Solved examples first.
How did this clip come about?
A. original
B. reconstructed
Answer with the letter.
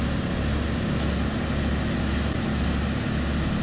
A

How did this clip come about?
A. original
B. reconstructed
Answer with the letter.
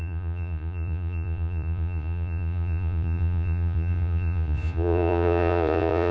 B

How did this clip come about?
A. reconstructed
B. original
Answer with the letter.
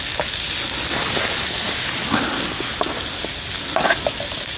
B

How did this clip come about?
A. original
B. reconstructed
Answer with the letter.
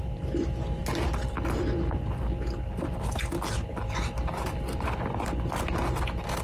A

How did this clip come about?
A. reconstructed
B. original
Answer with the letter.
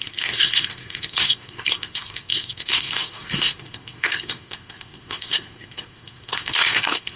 A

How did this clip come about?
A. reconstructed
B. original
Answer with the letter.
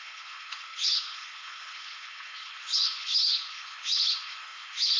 A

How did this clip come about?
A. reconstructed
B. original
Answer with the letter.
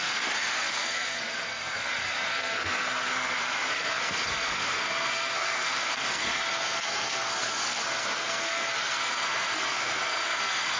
A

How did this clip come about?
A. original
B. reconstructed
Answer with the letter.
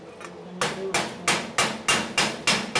A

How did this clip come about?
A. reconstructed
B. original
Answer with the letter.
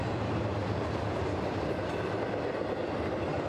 B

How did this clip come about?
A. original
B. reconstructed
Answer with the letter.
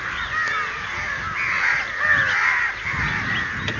A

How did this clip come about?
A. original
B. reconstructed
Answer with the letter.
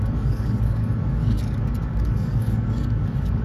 B